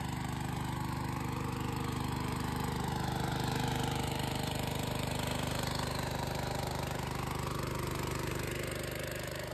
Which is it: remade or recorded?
remade